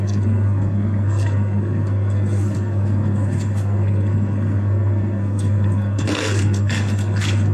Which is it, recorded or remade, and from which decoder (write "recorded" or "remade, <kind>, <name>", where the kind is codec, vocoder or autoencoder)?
remade, codec, SNAC